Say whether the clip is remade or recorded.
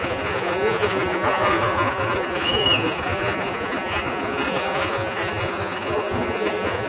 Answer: remade